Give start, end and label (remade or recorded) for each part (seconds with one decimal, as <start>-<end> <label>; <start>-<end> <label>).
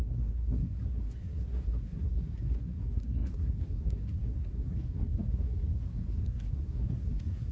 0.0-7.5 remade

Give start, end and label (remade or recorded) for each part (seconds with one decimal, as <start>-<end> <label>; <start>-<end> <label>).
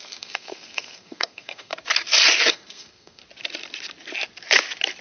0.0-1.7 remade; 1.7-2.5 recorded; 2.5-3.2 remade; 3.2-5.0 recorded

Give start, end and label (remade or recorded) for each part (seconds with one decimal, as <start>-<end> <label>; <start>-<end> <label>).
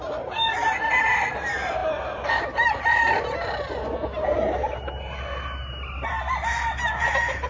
0.0-7.5 recorded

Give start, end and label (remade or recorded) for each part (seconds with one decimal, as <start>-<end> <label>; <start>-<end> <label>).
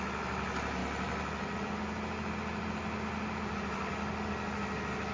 0.0-5.1 recorded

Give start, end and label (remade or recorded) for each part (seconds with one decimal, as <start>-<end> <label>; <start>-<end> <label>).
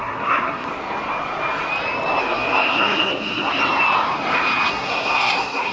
0.0-0.7 remade; 0.7-2.2 recorded; 2.2-3.6 remade; 3.6-4.7 recorded; 4.7-5.7 remade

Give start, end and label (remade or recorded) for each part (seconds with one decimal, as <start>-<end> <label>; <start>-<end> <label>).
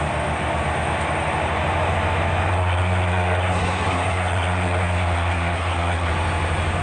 0.0-2.5 recorded; 2.5-6.1 remade; 6.1-6.8 recorded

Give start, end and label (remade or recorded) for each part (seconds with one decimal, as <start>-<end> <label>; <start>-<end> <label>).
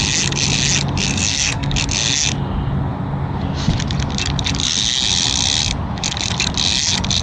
0.0-1.1 recorded; 1.1-1.7 remade; 1.7-7.2 recorded